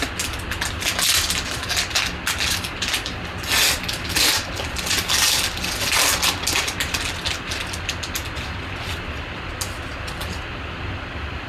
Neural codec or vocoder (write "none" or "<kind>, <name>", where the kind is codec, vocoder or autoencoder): none